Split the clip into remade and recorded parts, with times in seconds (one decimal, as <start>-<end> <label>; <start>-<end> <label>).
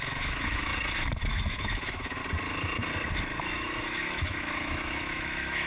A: 0.0-0.7 remade; 0.7-1.2 recorded; 1.2-2.2 remade; 2.2-3.4 recorded; 3.4-5.7 remade